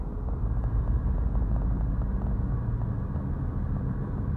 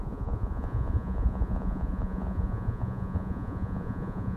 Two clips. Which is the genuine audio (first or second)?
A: first